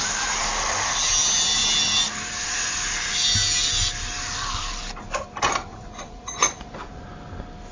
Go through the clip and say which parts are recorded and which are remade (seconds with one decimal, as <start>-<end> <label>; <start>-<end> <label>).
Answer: 0.0-5.7 recorded; 5.7-7.0 remade; 7.0-7.7 recorded